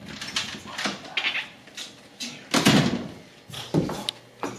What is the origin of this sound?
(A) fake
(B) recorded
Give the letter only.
B